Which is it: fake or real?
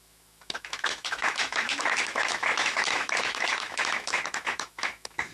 fake